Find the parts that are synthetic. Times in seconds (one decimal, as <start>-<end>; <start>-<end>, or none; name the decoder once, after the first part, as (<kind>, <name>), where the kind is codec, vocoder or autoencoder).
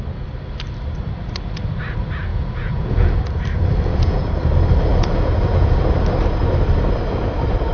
2.3-3.2 (vocoder, Vocos); 3.9-4.4; 4.9-5.8